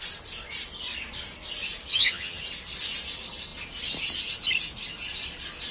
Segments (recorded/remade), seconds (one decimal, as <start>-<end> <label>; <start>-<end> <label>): 0.0-1.9 recorded; 1.9-2.4 remade; 2.4-5.7 recorded